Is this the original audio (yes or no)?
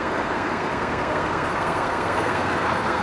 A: no